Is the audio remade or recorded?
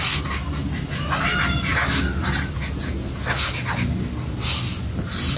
recorded